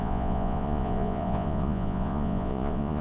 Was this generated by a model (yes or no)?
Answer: yes